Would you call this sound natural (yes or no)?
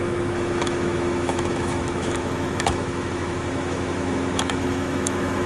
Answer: no